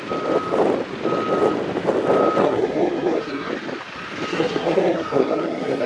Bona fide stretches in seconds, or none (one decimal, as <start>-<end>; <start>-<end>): 0.0-2.4; 3.5-4.3

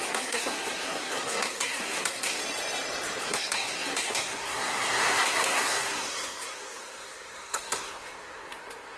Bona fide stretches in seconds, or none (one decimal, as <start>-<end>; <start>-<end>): 2.4-3.2

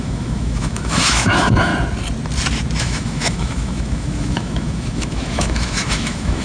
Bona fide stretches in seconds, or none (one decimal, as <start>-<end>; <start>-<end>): 1.7-2.8

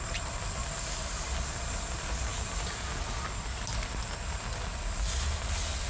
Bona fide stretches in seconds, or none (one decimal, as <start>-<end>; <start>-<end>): 0.0-5.9

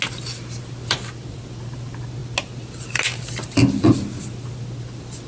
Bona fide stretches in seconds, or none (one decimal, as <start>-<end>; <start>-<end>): 0.0-5.3

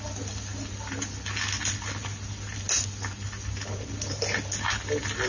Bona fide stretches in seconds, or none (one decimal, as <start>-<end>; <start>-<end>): 0.0-5.3

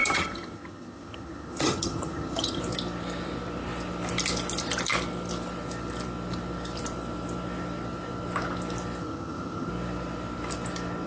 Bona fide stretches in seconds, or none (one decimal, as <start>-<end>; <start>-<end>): 2.6-9.0; 9.7-11.1